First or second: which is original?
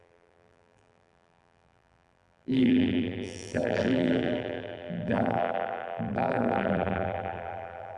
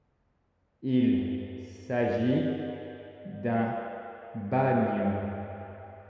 second